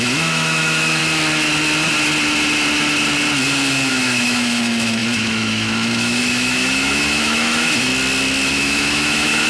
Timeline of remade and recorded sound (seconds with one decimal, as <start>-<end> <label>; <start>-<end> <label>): 0.0-1.0 remade; 1.0-3.9 recorded; 3.9-7.9 remade; 7.9-8.5 recorded; 8.5-9.5 remade